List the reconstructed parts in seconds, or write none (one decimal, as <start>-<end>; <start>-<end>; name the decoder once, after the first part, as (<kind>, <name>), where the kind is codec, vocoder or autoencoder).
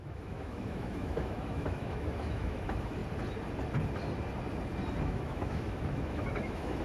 0.0-3.0 (autoencoder, DAC-VAE); 5.0-6.8